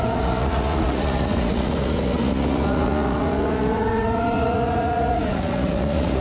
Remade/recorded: remade